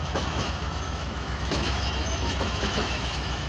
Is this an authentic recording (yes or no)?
no